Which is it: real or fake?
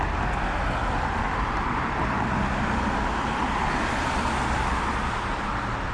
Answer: real